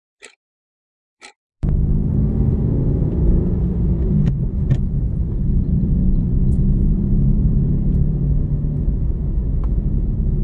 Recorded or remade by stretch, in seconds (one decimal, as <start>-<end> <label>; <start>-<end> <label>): 0.0-2.1 remade; 2.1-2.6 recorded; 2.6-10.4 remade